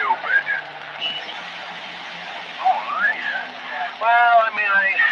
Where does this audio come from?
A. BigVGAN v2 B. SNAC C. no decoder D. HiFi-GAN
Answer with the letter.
C